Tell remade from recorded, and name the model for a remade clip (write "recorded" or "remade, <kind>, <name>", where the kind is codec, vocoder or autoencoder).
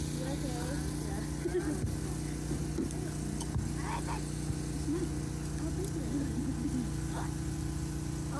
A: recorded